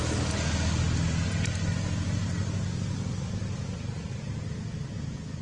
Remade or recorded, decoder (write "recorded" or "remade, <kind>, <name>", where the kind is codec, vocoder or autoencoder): recorded